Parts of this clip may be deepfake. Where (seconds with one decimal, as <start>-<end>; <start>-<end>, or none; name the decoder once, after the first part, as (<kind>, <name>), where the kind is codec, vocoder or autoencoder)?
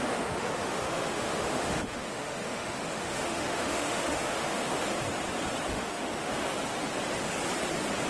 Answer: 0.0-4.8 (autoencoder, DAC-VAE); 5.7-6.5